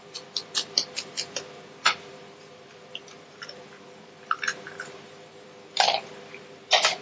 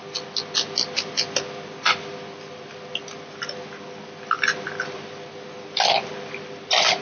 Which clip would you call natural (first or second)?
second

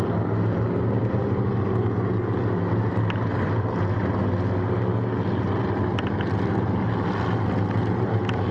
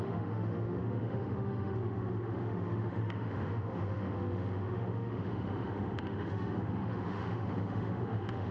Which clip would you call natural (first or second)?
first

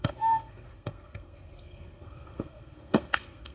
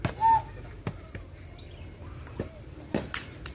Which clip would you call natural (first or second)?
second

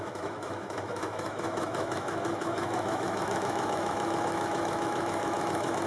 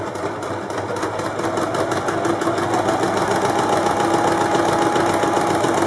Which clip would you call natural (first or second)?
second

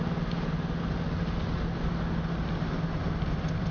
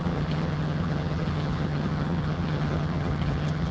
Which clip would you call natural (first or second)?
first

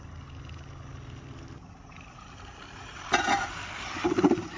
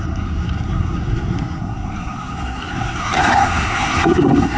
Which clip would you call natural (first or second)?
first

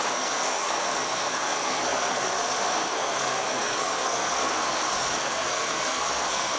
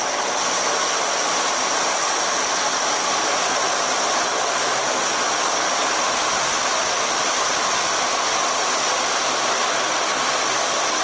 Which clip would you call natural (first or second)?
second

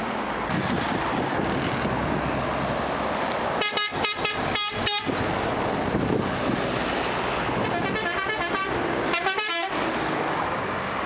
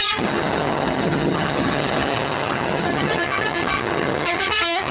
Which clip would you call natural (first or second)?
first